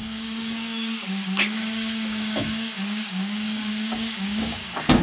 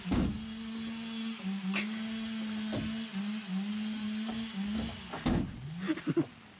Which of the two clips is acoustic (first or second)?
second